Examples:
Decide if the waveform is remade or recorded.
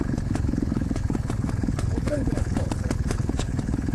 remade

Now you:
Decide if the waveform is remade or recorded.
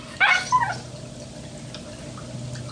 recorded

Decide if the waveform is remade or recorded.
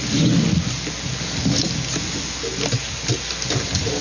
recorded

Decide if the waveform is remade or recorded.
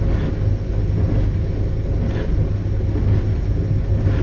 recorded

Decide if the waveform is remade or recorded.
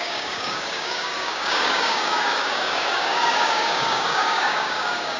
remade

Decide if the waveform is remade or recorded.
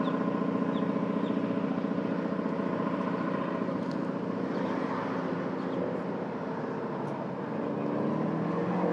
recorded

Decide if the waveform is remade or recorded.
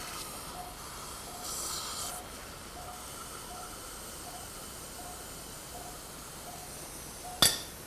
recorded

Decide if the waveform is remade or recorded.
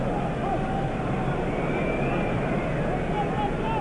recorded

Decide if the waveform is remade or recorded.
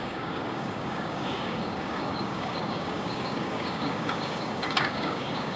remade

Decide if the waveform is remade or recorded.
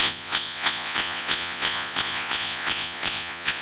remade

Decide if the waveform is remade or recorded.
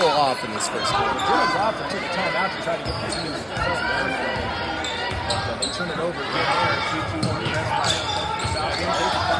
recorded